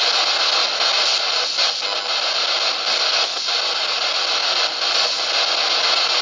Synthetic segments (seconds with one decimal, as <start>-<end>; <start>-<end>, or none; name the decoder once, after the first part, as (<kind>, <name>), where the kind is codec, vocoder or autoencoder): none